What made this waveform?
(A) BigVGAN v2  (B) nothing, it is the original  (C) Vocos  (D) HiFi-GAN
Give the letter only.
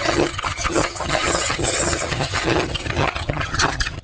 D